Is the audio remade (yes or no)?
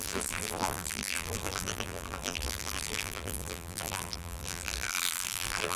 yes